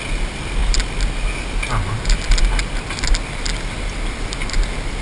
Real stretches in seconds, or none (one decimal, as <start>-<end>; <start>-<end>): 0.0-5.0